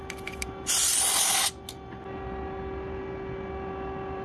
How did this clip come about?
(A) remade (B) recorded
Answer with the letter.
B